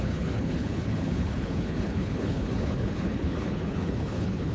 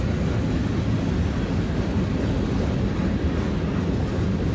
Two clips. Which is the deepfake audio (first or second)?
first